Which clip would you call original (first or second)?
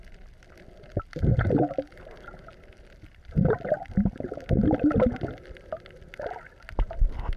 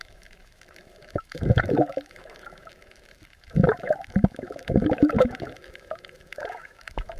first